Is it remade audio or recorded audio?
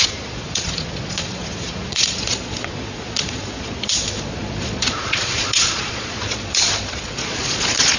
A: remade